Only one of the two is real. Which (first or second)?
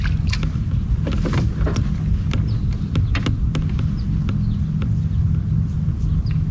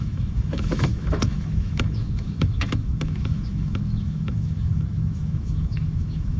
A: first